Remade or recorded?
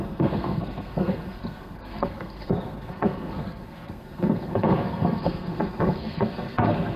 remade